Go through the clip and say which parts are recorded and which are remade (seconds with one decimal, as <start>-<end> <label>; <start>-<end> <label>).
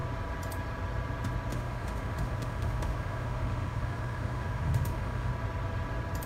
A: 0.0-1.5 recorded; 1.5-5.3 remade; 5.3-6.3 recorded